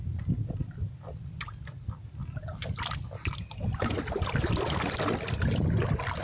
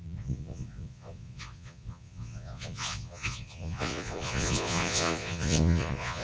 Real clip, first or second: first